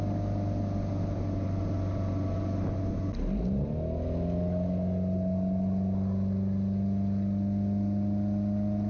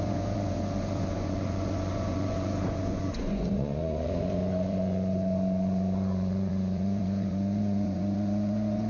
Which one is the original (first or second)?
first